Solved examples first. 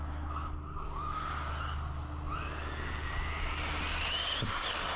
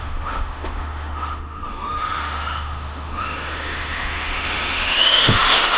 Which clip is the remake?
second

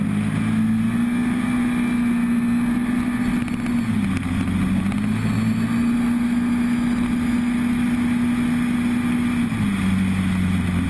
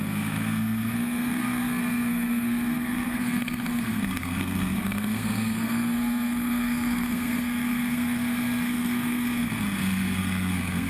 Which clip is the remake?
second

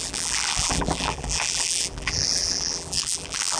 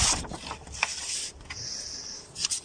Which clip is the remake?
first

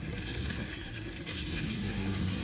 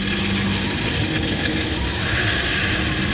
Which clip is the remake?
first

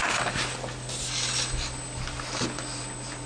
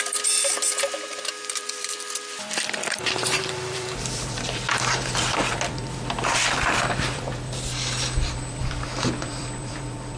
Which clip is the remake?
second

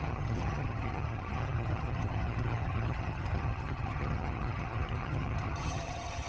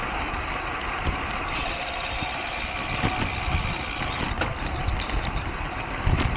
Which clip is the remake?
first